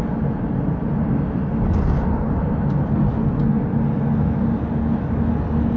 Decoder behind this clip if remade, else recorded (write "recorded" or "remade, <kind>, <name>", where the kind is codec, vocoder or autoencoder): recorded